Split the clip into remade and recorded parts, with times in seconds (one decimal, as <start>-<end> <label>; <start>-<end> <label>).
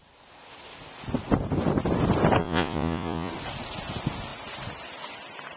0.0-2.4 recorded; 2.4-3.3 remade; 3.3-5.6 recorded